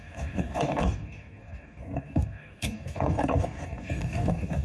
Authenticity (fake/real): fake